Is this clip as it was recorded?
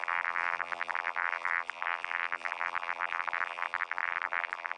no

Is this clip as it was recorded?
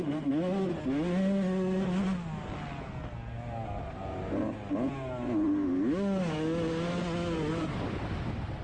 yes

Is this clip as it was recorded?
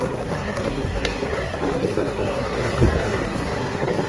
no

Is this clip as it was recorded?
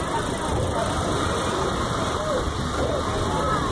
no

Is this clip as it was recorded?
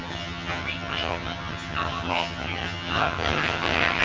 no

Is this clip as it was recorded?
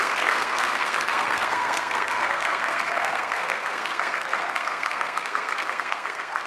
no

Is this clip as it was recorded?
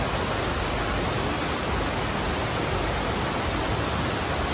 yes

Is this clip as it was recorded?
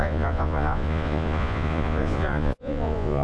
no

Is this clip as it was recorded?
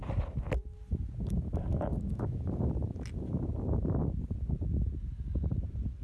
yes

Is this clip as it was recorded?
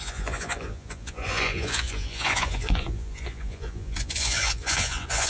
no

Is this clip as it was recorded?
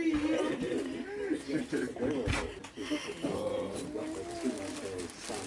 yes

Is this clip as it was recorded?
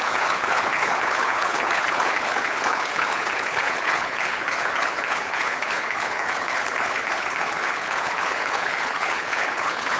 no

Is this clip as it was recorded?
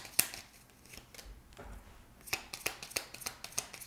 yes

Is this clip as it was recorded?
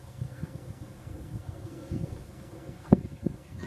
no